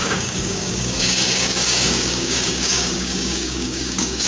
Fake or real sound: fake